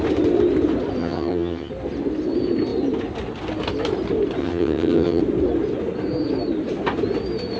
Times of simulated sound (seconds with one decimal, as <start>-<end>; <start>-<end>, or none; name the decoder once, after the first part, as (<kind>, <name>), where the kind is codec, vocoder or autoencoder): 1.0-1.7 (vocoder, HiFi-GAN); 4.4-5.2